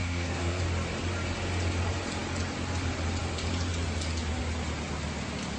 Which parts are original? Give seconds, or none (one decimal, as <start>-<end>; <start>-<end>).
0.6-5.6